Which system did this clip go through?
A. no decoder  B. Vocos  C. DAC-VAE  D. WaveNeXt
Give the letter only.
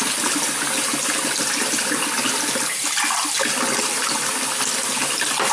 A